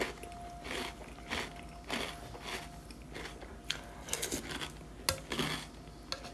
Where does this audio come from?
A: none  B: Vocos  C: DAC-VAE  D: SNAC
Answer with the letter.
A